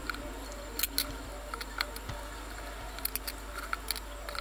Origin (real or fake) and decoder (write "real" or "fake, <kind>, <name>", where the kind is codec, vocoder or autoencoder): real